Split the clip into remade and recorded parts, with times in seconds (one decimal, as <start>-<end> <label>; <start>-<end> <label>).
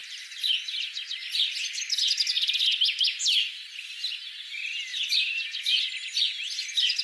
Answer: 0.0-7.0 recorded